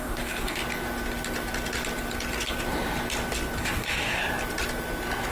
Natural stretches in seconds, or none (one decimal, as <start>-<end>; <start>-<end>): 0.6-3.6; 4.2-5.3